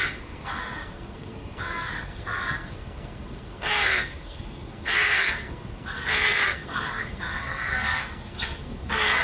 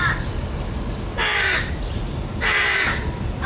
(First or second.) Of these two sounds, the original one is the second